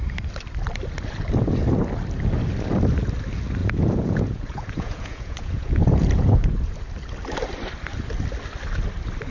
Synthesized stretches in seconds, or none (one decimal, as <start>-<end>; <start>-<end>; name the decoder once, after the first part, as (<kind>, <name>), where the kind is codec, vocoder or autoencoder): 3.6-6.6 (vocoder, Vocos)